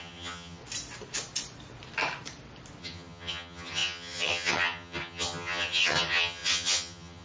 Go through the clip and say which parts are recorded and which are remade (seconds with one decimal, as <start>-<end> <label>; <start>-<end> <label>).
0.0-0.6 remade; 0.6-2.8 recorded; 2.8-7.2 remade